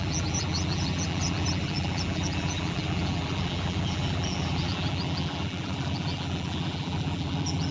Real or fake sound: fake